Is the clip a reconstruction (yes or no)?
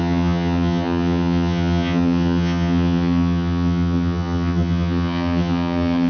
yes